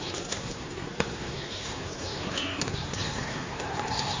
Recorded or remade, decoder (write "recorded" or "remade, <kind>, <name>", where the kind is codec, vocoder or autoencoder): remade, codec, SNAC